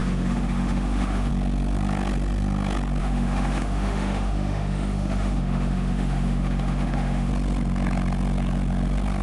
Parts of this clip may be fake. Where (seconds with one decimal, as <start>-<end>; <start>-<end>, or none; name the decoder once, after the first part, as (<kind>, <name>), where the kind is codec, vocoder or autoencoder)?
0.0-1.3 (autoencoder, DAC-VAE); 3.0-7.3